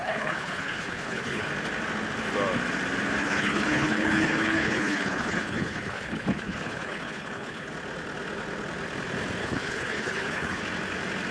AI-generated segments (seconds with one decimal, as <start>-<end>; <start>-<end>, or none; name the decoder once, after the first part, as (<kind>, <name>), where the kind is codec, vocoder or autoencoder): 0.0-1.5 (codec, HILCodec); 3.2-7.7; 9.4-10.6